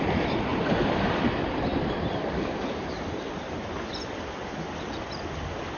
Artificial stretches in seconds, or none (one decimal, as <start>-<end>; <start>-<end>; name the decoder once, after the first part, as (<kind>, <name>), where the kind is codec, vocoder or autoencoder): none